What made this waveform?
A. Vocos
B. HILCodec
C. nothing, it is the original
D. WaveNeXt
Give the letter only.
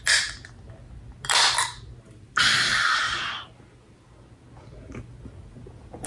C